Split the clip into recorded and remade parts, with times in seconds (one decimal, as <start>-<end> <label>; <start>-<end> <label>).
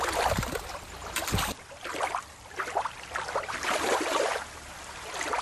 0.0-1.0 recorded; 1.0-4.1 remade; 4.1-5.4 recorded